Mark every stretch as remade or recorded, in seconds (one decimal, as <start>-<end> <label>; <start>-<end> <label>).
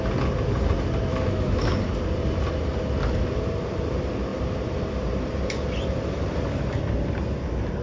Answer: 0.0-1.1 recorded; 1.1-1.7 remade; 1.7-7.8 recorded